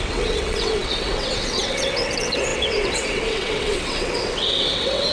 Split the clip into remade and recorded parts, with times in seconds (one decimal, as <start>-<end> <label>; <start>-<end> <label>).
0.0-5.1 remade